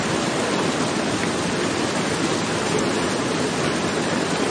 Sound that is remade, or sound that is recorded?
remade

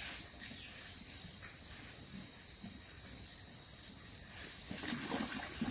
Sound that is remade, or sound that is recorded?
recorded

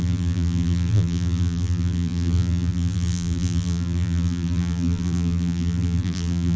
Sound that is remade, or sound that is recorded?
remade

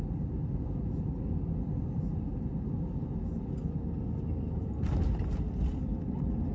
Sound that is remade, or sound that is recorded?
recorded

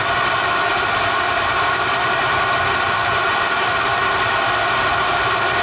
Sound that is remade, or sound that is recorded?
remade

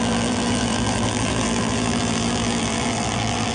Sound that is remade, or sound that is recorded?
remade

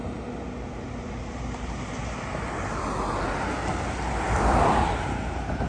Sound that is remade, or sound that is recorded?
recorded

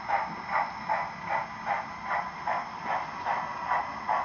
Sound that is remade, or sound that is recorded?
recorded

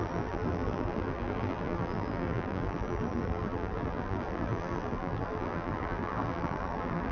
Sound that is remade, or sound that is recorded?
remade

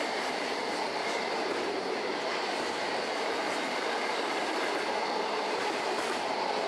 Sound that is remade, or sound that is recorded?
remade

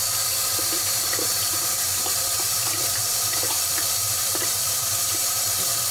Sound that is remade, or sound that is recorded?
remade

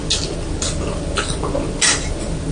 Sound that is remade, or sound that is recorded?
recorded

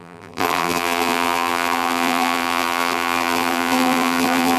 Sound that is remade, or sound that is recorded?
remade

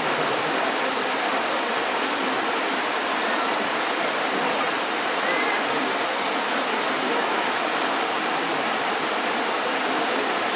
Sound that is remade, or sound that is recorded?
remade